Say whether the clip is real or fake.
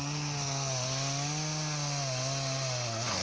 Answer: real